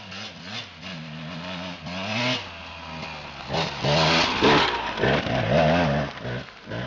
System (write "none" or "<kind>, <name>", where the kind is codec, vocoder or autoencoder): none